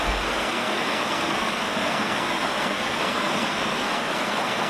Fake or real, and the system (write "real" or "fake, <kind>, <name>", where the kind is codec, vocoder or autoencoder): fake, codec, SNAC